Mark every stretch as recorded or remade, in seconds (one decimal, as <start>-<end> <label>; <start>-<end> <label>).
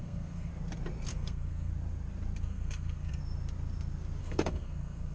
0.0-0.5 remade; 0.5-1.1 recorded; 1.1-1.7 remade; 1.7-2.4 recorded; 2.4-3.2 remade; 3.2-4.2 recorded; 4.2-5.1 remade